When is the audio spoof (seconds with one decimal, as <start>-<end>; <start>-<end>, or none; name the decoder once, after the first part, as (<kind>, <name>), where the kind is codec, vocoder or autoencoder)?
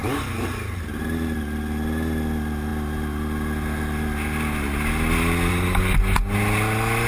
none